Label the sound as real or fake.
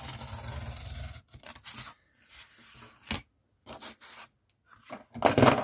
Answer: real